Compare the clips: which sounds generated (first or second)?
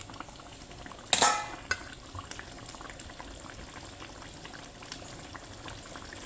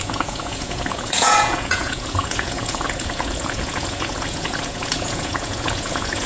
second